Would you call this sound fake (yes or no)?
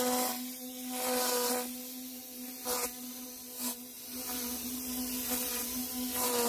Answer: no